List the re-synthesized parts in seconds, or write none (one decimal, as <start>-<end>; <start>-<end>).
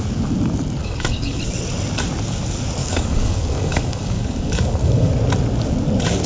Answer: 0.8-1.4; 2.8-5.1